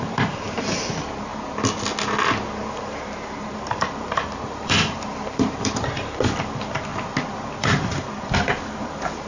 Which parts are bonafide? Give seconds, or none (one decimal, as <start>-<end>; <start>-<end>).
1.3-2.7; 6.9-7.6